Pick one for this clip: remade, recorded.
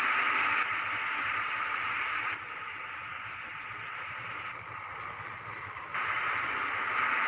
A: recorded